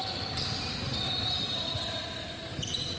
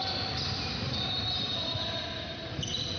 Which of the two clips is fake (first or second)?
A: first